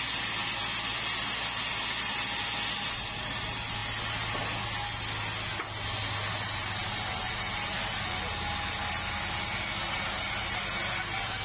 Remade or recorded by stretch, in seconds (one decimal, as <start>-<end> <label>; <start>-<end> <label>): 0.0-11.4 recorded